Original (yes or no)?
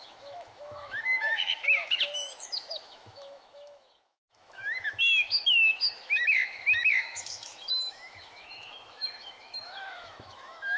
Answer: no